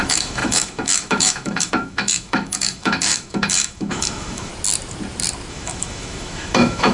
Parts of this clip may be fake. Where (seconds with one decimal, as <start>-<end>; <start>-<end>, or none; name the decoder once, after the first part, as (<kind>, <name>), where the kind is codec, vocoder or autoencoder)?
0.0-4.5 (autoencoder, DAC-VAE); 5.5-6.9